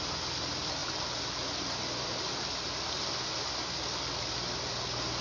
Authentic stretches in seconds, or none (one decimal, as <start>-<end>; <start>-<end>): 0.0-5.2